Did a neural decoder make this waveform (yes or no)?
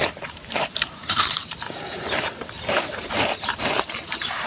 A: yes